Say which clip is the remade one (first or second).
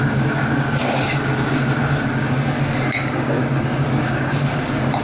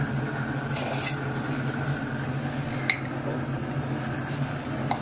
first